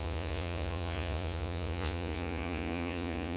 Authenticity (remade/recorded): remade